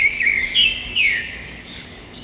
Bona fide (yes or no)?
no